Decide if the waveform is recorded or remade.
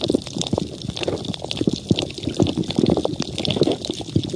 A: recorded